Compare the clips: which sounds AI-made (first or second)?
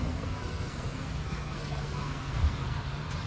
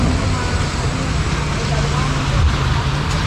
first